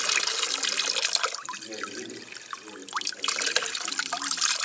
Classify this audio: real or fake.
real